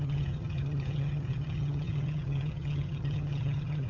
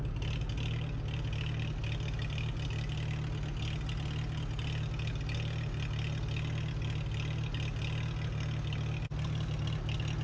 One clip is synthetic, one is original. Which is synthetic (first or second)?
first